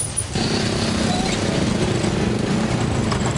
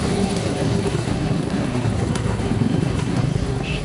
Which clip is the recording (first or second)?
first